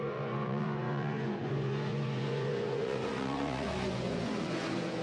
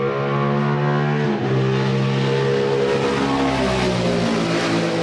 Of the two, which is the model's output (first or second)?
first